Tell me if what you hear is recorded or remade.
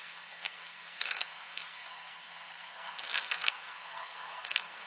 remade